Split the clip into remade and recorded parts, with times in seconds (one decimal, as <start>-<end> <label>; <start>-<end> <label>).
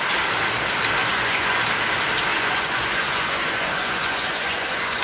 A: 0.0-1.0 recorded; 1.0-1.6 remade; 1.6-2.3 recorded; 2.3-5.0 remade